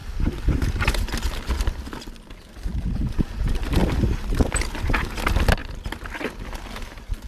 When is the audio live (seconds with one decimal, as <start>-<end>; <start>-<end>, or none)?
0.0-7.3